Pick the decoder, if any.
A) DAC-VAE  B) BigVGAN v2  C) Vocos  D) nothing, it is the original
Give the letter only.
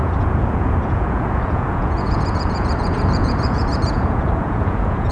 C